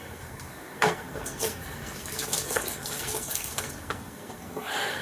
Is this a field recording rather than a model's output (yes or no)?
no